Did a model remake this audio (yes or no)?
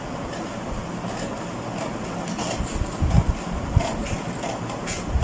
no